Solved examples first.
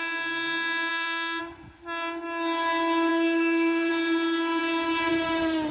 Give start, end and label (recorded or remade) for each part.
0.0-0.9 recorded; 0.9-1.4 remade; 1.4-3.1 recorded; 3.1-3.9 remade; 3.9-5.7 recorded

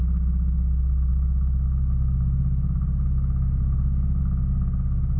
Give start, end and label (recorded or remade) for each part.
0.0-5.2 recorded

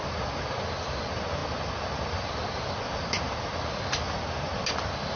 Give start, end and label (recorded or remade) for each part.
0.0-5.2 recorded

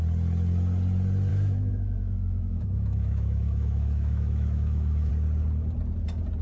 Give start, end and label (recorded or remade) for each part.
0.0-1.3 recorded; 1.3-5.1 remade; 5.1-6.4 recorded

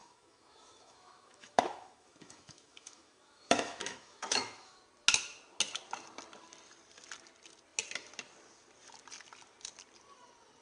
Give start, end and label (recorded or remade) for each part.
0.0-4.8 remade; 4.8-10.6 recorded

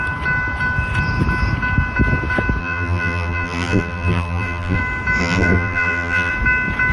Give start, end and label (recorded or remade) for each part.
0.0-2.6 recorded; 2.6-4.8 remade; 4.8-5.2 recorded; 5.2-6.3 remade; 6.3-6.9 recorded

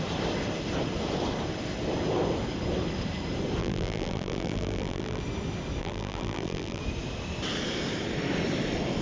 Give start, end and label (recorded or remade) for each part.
0.0-3.6 recorded; 3.6-5.2 remade; 5.2-5.8 recorded; 5.8-6.8 remade; 6.8-9.0 recorded

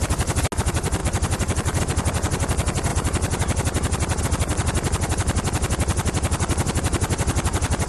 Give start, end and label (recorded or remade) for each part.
0.0-1.0 recorded; 1.0-1.8 remade; 1.8-7.9 recorded